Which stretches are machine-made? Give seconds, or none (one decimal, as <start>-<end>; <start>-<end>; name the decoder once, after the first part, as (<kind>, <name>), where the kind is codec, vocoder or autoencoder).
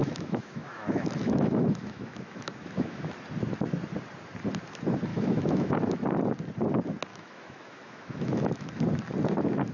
0.0-3.1 (autoencoder, DAC-VAE); 5.1-5.8; 7.1-8.8